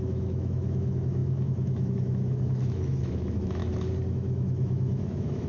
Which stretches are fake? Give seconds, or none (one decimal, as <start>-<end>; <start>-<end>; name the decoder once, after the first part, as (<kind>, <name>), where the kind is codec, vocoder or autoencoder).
0.0-3.6 (autoencoder, DAC-VAE); 4.1-5.5